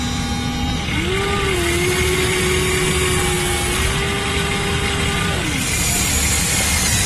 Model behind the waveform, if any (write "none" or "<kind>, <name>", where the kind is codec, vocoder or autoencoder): none